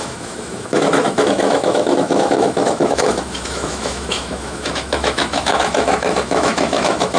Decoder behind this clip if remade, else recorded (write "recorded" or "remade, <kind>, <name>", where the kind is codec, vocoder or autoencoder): remade, autoencoder, DAC-VAE